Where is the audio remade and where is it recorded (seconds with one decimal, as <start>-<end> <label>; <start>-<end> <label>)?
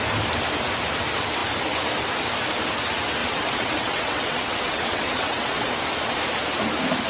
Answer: 0.0-3.2 recorded; 3.2-5.7 remade; 5.7-7.1 recorded